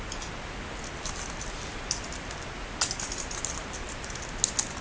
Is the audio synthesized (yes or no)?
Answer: no